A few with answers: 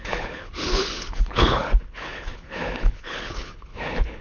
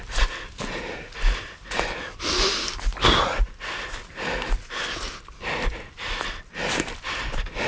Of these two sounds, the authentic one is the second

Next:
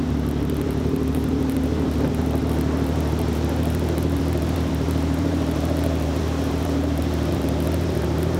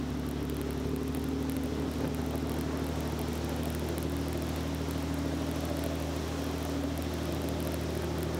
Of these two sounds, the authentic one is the second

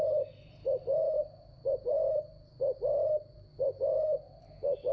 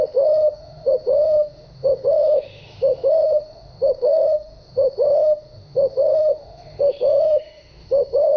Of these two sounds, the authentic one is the first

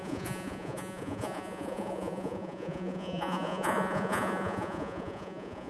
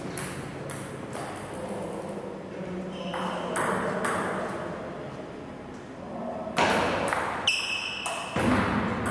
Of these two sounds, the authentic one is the second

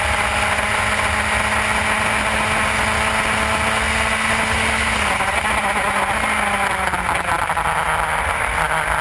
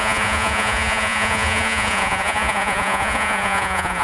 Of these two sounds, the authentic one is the first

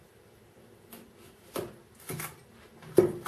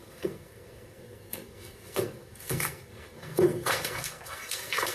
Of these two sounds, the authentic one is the first